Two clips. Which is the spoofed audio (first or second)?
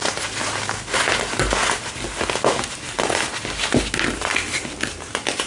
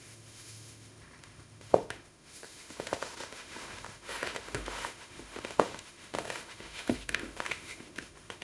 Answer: second